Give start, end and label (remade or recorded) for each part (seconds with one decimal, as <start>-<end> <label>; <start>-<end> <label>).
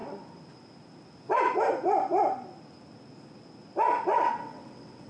0.0-4.1 recorded; 4.1-5.1 remade